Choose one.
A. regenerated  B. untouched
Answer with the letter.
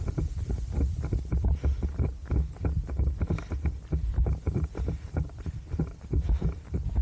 B